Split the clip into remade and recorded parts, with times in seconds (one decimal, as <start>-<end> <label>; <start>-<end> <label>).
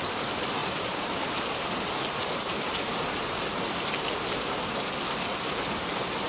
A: 0.0-0.6 recorded; 0.6-1.2 remade; 1.2-2.2 recorded; 2.2-4.8 remade; 4.8-6.3 recorded